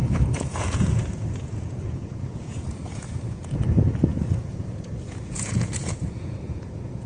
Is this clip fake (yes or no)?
yes